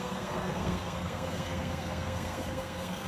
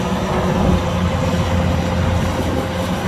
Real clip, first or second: second